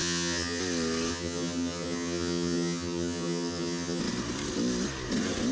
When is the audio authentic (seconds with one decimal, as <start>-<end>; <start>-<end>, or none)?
0.6-1.1; 4.0-5.5